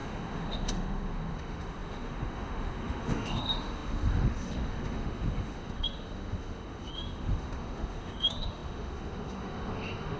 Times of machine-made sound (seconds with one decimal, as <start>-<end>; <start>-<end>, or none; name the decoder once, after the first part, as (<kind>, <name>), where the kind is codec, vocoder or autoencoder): 0.0-10.2 (autoencoder, DAC-VAE)